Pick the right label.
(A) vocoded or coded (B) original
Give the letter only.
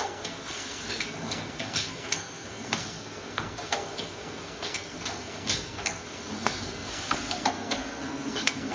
A